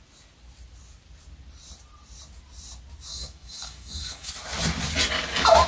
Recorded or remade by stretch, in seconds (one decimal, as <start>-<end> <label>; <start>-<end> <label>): 0.0-3.1 recorded; 3.1-4.3 remade; 4.3-5.7 recorded